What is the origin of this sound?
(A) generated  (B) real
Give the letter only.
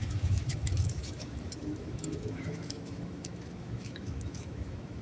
A